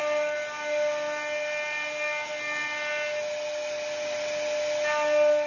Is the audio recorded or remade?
recorded